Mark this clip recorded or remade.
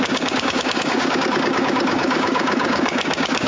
remade